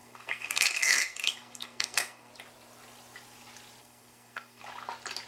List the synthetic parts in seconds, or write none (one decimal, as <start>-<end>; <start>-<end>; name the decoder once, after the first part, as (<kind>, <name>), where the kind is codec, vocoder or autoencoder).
0.0-2.3 (codec, SNAC); 3.8-4.6